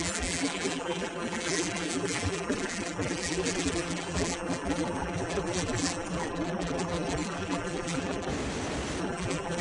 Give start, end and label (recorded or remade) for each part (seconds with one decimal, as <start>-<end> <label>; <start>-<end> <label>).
0.0-8.3 remade; 8.3-9.0 recorded; 9.0-9.6 remade